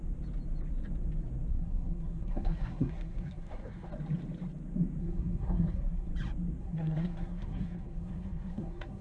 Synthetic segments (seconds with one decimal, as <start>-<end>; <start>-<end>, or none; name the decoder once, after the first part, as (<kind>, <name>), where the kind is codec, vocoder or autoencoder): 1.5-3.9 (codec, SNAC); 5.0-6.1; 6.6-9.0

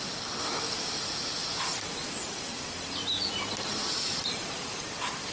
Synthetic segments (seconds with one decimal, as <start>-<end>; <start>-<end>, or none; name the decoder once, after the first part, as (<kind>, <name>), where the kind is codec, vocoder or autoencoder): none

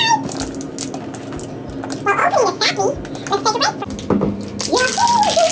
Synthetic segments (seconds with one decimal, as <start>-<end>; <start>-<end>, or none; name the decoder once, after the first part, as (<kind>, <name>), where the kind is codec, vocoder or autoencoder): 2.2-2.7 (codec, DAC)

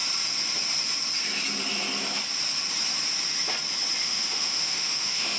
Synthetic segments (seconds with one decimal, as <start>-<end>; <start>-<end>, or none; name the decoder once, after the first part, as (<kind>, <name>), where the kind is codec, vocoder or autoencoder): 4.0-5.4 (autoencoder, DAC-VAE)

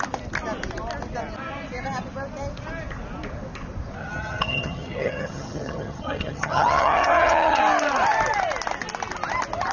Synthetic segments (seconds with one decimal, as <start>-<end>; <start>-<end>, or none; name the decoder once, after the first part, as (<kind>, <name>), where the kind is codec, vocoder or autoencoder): 4.0-7.6 (vocoder, HiFi-GAN)